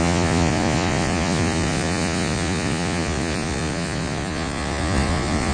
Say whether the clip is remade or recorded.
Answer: remade